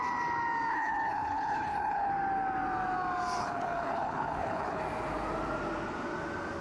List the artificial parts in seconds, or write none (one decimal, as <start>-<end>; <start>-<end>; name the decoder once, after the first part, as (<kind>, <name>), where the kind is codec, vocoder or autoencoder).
0.7-2.1 (codec, HILCodec); 3.4-4.8